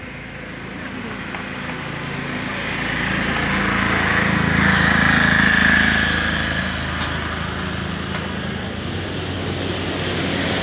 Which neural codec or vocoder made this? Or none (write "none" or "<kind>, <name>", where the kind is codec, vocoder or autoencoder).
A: none